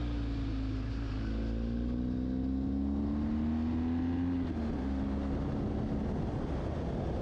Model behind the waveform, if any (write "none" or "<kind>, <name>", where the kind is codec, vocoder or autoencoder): none